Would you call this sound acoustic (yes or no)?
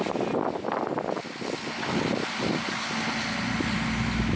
yes